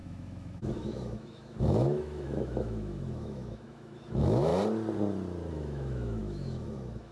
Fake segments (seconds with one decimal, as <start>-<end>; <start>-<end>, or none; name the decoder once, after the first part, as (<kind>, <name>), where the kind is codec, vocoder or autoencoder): 0.0-4.5 (autoencoder, DAC-VAE); 5.5-7.1